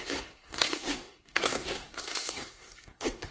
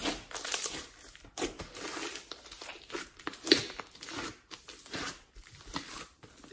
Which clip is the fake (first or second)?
first